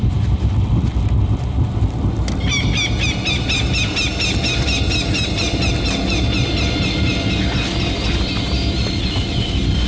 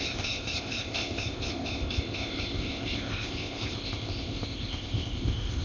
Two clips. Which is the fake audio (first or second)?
second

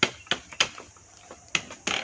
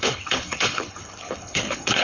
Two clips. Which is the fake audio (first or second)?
second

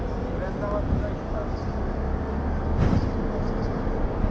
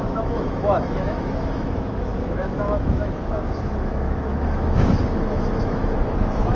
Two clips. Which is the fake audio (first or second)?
second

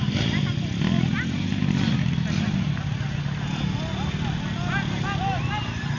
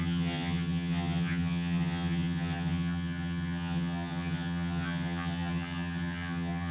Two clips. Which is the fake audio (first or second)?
second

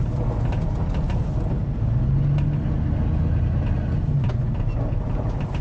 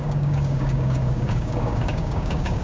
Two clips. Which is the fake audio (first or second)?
second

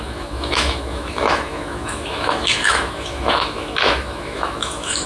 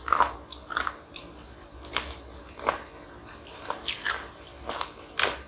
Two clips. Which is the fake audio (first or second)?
first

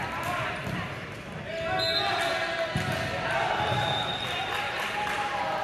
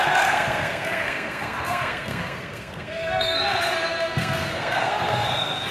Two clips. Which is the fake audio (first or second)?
second